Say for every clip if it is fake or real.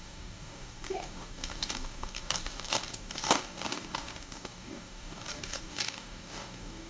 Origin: fake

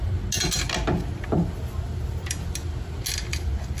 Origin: real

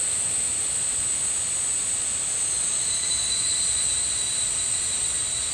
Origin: real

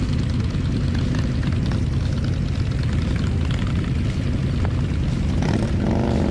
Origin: real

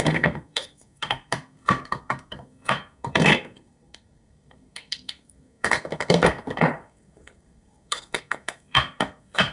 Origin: fake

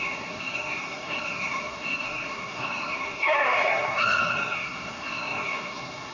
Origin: fake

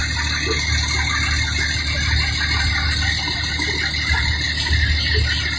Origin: real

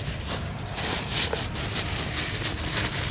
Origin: real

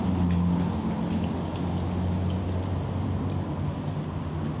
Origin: real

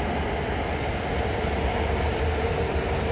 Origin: real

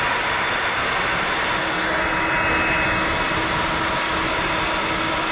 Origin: real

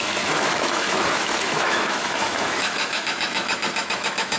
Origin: fake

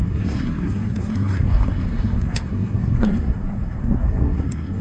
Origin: fake